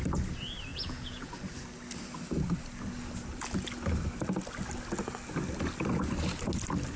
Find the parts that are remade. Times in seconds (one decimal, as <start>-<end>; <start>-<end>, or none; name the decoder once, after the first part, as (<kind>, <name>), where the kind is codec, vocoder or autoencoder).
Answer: 0.7-1.3 (vocoder, Vocos)